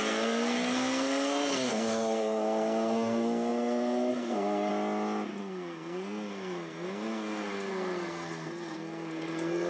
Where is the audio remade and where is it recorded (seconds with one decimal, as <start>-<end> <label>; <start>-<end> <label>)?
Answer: 0.0-4.7 remade; 4.7-5.4 recorded; 5.4-9.7 remade